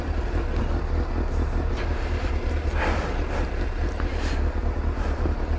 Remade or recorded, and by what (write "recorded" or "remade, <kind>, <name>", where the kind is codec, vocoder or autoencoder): recorded